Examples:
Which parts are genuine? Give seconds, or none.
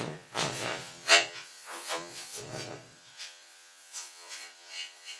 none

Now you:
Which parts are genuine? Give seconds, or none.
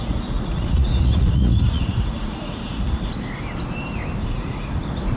3.1-4.2; 4.8-5.2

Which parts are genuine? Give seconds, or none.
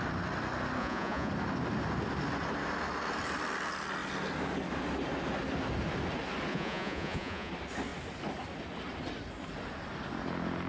0.0-0.8; 1.3-6.5; 7.5-10.7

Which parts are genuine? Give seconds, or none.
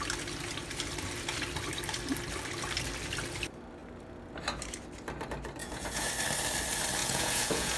0.0-5.6; 6.1-7.0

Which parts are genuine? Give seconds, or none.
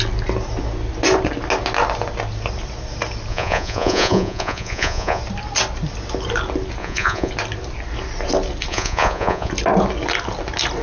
0.0-3.3; 5.2-6.8; 7.3-8.7; 9.5-10.8